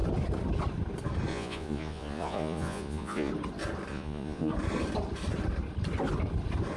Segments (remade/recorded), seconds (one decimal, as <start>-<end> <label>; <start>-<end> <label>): 0.0-1.3 recorded; 1.3-3.3 remade; 3.3-3.9 recorded; 3.9-4.5 remade; 4.5-6.8 recorded